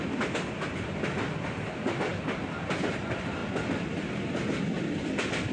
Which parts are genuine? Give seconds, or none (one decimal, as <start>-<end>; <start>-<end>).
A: 0.0-5.5